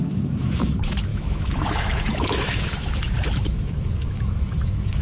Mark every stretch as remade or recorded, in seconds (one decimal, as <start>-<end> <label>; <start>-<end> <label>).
0.0-5.0 remade